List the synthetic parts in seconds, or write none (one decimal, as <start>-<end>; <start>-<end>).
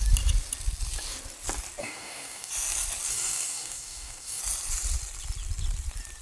1.8-2.5; 3.1-4.4